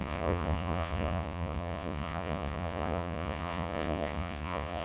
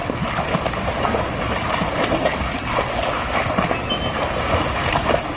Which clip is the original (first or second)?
second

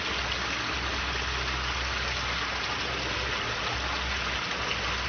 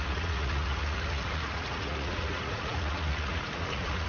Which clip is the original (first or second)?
first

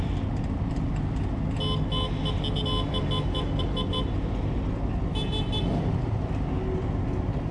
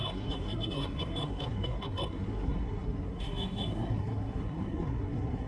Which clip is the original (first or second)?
first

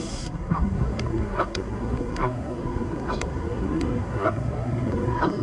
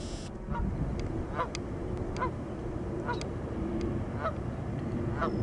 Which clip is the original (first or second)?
second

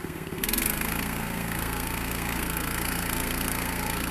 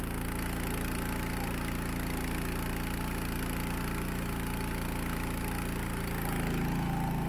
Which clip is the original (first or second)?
second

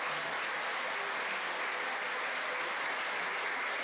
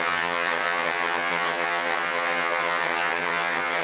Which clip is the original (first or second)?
first